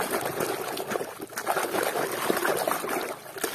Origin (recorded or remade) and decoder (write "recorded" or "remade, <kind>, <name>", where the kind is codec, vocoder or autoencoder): recorded